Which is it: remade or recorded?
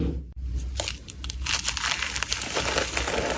recorded